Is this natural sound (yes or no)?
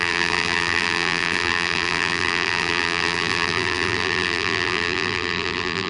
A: no